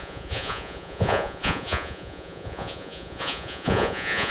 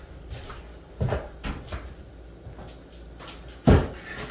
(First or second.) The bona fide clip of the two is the second